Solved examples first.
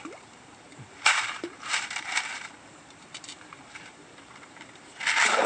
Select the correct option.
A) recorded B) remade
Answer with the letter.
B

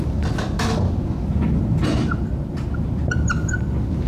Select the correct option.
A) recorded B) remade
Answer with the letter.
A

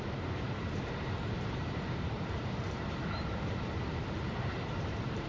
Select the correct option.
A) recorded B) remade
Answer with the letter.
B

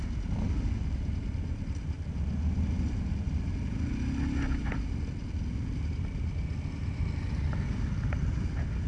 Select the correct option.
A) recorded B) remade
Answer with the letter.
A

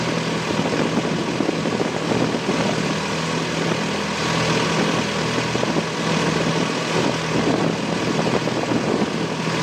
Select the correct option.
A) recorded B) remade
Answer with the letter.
A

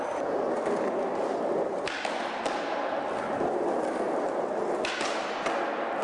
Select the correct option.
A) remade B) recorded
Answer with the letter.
B